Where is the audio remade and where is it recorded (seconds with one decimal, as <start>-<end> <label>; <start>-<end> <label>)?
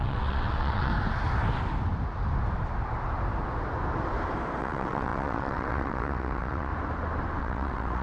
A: 0.0-0.9 remade; 0.9-4.6 recorded; 4.6-6.7 remade; 6.7-7.4 recorded; 7.4-8.0 remade